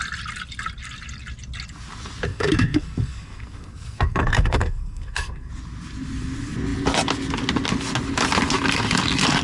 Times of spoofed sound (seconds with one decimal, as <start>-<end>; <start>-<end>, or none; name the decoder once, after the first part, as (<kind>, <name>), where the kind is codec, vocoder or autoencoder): 2.3-5.5 (codec, SNAC)